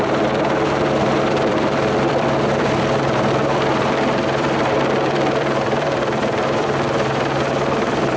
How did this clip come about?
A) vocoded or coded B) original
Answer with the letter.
A